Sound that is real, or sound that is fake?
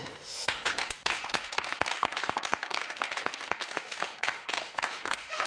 fake